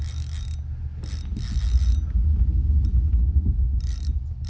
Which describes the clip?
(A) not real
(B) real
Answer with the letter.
B